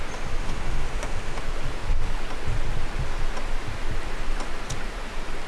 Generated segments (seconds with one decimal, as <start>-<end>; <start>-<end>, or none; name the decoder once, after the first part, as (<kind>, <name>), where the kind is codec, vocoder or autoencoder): 0.4-1.4 (autoencoder, DAC-VAE)